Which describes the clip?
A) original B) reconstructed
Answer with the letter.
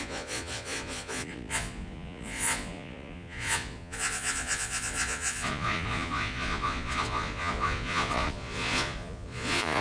B